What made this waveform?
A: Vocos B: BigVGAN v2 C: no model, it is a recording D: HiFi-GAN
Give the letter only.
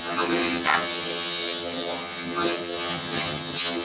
D